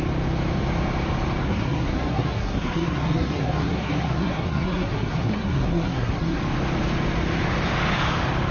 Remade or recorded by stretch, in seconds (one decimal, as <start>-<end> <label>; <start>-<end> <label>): 0.0-1.4 recorded; 1.4-6.4 remade; 6.4-8.5 recorded